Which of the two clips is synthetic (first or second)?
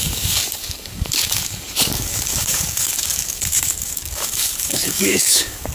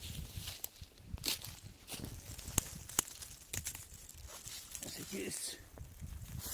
first